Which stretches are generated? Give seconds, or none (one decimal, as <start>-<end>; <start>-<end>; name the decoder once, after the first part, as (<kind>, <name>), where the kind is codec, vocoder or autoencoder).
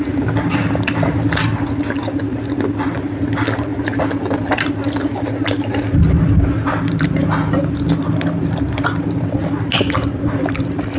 0.0-3.7 (vocoder, BigVGAN v2); 7.6-11.0